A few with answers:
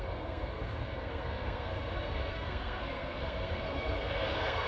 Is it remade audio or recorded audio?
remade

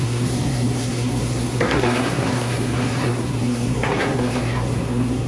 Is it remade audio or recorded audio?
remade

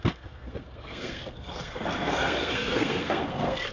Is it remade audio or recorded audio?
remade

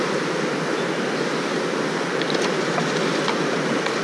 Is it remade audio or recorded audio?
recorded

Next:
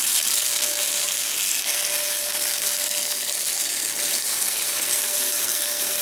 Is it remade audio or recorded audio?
remade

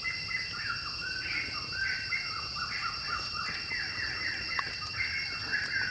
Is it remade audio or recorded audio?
recorded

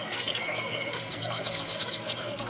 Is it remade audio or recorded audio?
remade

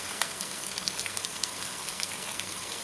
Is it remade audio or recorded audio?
remade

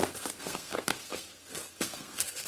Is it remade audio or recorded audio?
remade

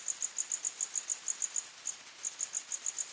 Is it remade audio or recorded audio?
recorded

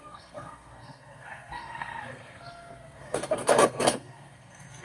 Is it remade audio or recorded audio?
remade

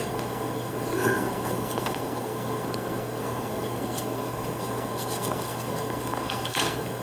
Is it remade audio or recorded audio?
remade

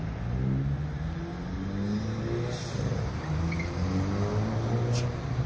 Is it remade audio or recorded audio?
recorded